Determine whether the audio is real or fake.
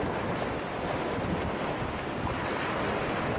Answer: real